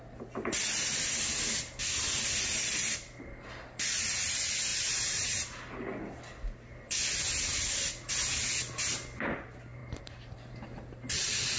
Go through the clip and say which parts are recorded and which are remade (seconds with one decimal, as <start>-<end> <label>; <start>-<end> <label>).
0.0-2.8 recorded; 2.8-3.5 remade; 3.5-4.7 recorded; 4.7-5.4 remade; 5.4-9.8 recorded; 9.8-10.5 remade; 10.5-11.6 recorded